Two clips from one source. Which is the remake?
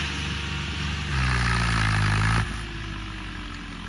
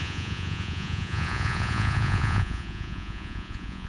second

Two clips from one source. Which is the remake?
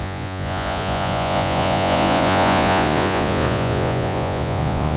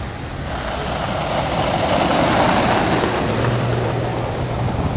first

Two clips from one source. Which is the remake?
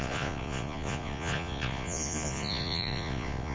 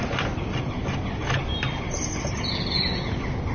first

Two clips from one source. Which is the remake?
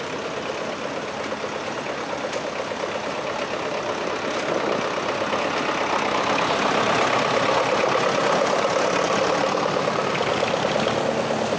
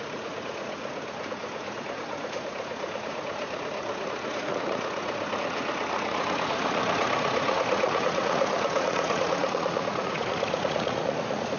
second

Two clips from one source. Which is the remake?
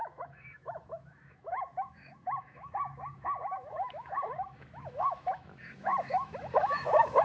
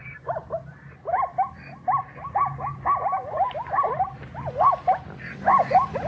first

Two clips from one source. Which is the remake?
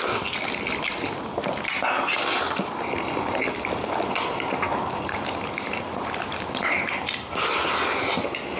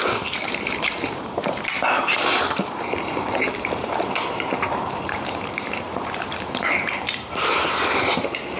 second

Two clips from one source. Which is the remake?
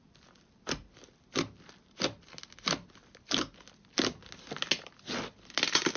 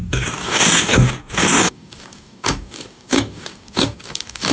second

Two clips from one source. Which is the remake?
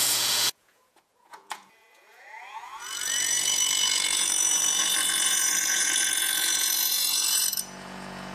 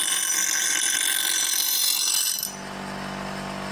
first